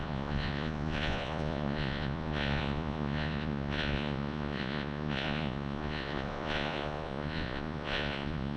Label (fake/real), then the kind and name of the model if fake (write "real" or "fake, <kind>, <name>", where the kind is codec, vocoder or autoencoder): fake, vocoder, Vocos